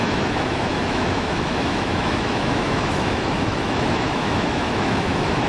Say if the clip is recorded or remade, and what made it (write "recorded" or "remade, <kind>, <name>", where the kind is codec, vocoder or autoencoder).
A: remade, autoencoder, DAC-VAE